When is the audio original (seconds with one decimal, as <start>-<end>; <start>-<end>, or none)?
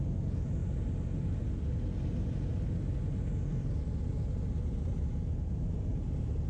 0.0-6.5